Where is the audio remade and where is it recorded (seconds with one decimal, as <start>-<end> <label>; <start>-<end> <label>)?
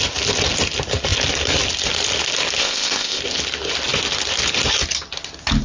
0.0-2.6 recorded; 2.6-3.2 remade; 3.2-5.6 recorded